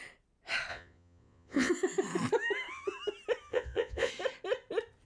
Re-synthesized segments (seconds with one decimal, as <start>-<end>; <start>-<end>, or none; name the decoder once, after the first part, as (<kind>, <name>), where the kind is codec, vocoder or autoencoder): 0.7-1.7 (vocoder, Vocos); 3.5-4.1